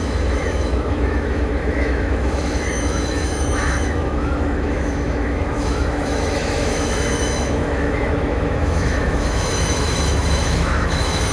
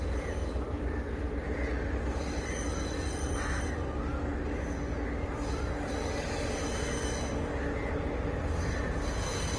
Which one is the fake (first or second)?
first